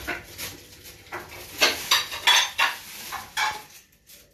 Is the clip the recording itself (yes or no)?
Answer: yes